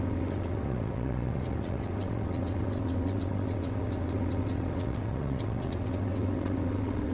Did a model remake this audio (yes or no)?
yes